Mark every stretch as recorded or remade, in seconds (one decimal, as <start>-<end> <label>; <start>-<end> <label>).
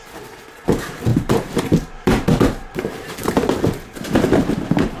0.0-1.1 recorded; 1.1-3.3 remade; 3.3-5.0 recorded